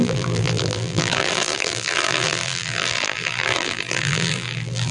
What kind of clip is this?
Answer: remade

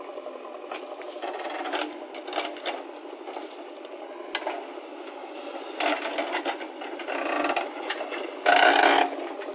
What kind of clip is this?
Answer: recorded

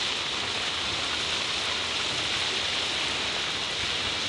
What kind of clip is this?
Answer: recorded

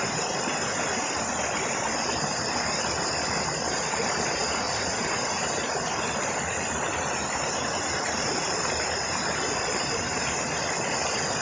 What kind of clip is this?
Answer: recorded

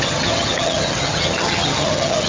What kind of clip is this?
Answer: remade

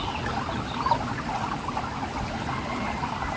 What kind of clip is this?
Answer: recorded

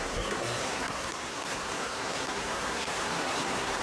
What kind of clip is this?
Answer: remade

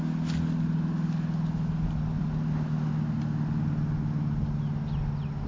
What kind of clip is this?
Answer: recorded